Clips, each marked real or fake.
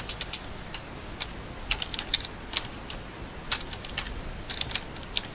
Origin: real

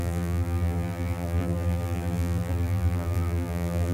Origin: fake